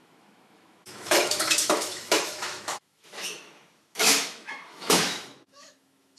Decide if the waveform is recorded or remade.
remade